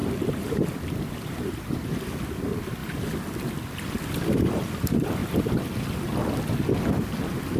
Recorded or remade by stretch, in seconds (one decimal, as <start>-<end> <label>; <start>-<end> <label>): 0.0-1.9 remade; 1.9-7.6 recorded